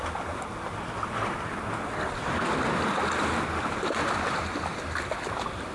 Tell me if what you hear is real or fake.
real